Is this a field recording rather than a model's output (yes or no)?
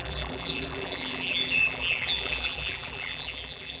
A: no